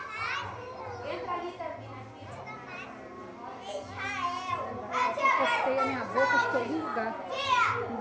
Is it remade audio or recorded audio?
recorded